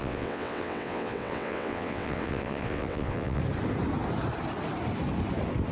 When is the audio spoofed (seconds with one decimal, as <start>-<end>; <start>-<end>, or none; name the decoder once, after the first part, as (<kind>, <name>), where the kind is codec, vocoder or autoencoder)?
0.0-3.4 (vocoder, WaveNeXt)